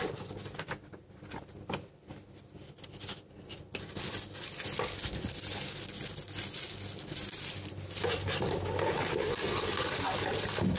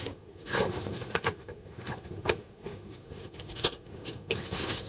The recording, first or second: first